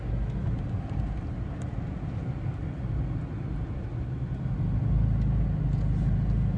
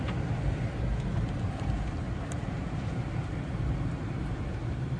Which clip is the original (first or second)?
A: first